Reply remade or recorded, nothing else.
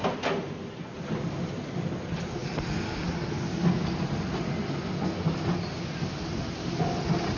recorded